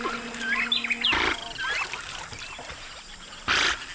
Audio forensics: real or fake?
real